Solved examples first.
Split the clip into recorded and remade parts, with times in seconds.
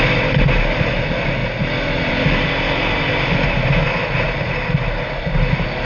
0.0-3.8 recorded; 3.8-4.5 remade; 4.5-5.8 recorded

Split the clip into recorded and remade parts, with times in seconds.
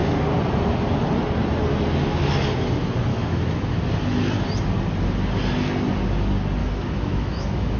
0.0-3.1 recorded; 3.1-3.8 remade; 3.8-6.6 recorded; 6.6-7.8 remade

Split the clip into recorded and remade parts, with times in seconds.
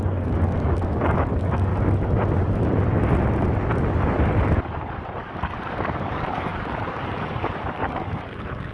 0.0-1.7 remade; 1.7-5.2 recorded; 5.2-8.7 remade